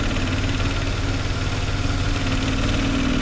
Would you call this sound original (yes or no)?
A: yes